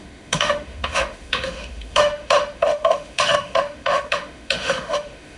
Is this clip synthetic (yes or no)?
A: yes